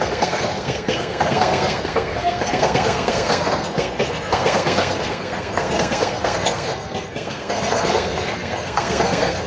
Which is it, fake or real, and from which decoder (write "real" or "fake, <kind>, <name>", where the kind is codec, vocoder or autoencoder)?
fake, codec, SNAC